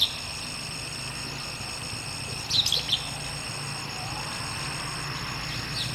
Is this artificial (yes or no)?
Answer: no